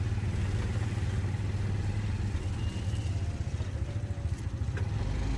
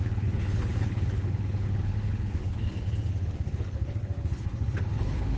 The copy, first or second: second